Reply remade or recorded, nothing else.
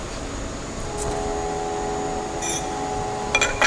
recorded